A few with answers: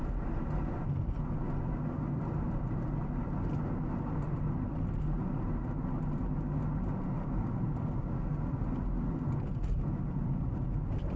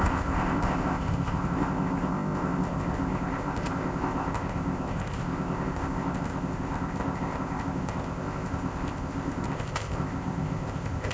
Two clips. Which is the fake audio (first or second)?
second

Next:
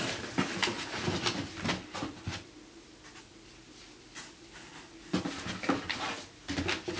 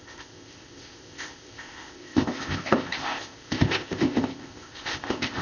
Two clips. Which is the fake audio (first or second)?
second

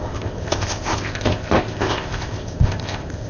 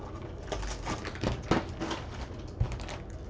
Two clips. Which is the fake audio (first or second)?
first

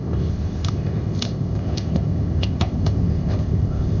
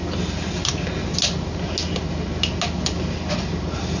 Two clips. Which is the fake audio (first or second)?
first